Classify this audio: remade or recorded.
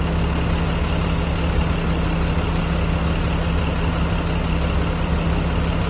recorded